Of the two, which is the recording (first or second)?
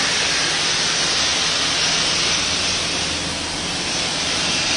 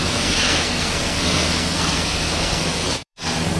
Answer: first